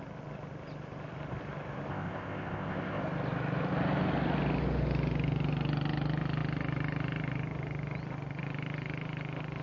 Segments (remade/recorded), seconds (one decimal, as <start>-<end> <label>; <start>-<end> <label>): 0.0-1.9 recorded; 1.9-3.0 remade; 3.0-9.6 recorded